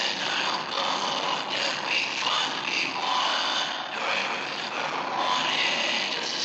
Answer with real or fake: real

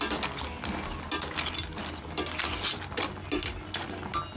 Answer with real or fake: real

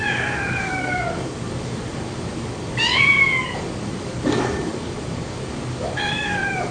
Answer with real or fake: fake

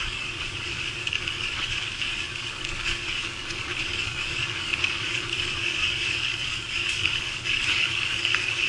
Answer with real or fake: fake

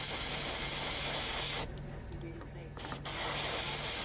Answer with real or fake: real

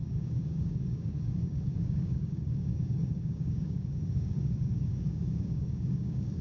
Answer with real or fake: fake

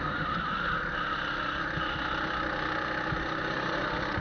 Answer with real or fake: real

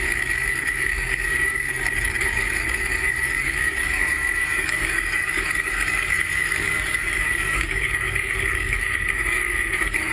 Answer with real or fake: fake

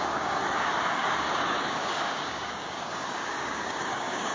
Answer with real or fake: fake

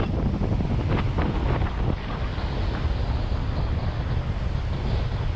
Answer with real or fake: real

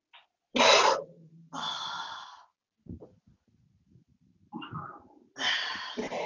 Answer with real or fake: real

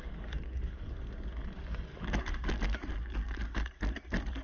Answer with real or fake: fake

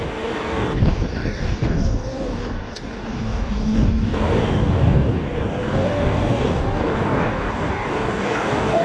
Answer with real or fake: fake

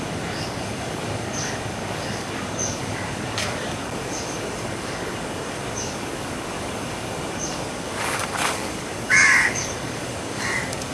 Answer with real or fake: fake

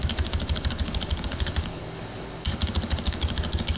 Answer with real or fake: fake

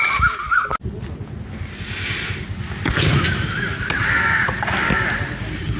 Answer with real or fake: real